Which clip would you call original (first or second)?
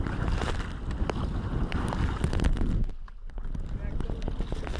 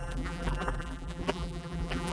first